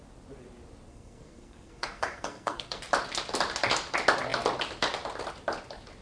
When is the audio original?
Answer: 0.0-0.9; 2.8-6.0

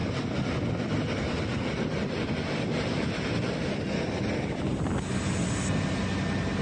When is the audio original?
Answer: 0.0-6.6